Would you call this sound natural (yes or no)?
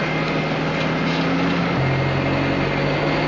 yes